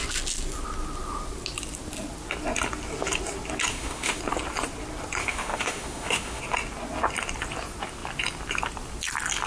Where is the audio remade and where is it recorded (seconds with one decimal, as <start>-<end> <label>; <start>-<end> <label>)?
0.0-3.7 recorded; 3.7-4.2 remade; 4.2-5.2 recorded; 5.2-6.4 remade; 6.4-9.5 recorded